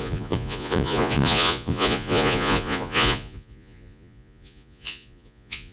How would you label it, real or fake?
fake